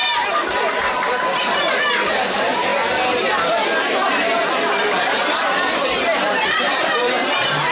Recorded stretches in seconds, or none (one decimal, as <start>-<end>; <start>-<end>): 2.7-4.5